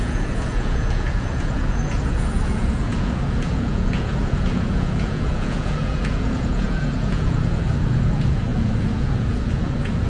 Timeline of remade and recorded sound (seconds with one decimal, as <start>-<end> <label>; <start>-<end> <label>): 0.0-10.1 remade